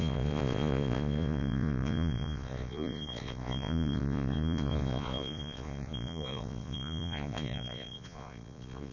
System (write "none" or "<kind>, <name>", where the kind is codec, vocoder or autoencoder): vocoder, Vocos